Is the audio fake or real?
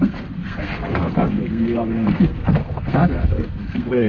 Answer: fake